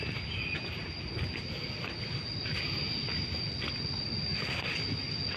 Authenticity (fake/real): real